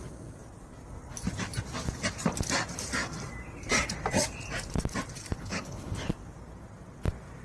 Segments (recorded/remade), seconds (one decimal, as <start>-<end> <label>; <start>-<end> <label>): 0.0-5.4 recorded; 5.4-6.1 remade; 6.1-7.4 recorded